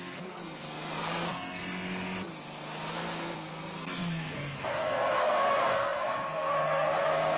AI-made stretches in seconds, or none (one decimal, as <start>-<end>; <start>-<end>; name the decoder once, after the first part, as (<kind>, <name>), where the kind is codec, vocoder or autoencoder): 0.0-1.6 (codec, SNAC); 2.9-7.4